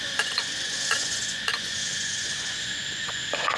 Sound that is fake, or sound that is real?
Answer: fake